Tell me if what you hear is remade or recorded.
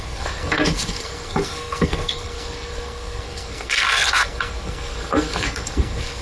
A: remade